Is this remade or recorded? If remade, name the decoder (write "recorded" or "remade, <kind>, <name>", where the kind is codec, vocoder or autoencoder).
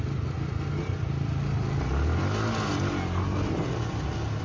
recorded